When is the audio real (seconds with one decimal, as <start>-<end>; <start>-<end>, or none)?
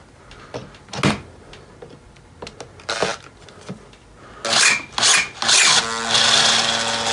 0.0-7.1